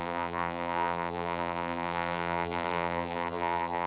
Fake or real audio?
fake